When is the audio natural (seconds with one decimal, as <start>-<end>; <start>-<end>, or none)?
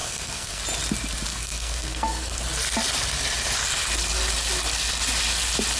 0.6-1.3; 2.4-5.8